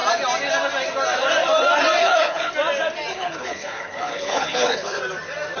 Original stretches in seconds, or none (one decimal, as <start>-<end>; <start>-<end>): 0.0-2.0; 2.5-3.1; 5.0-5.6